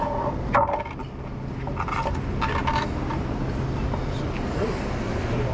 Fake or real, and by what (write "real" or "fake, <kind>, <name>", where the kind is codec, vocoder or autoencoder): real